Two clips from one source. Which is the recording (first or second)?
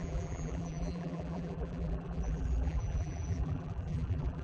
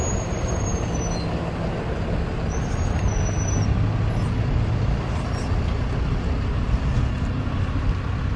second